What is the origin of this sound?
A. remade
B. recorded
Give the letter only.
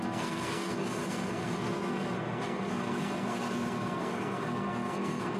A